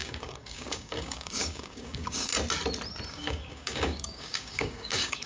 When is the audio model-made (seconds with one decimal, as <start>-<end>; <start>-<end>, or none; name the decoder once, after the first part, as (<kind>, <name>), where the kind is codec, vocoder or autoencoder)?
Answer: 0.0-2.3 (codec, DAC); 3.1-5.3